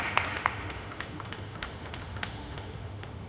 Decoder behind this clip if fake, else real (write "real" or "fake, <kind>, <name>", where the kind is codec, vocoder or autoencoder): fake, autoencoder, DAC-VAE